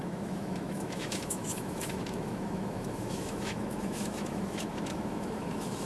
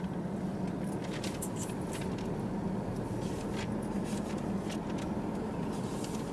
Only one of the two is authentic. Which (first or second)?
second